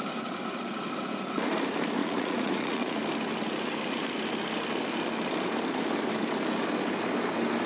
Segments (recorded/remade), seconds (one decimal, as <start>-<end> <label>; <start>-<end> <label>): 0.0-2.0 recorded; 2.0-3.0 remade; 3.0-7.7 recorded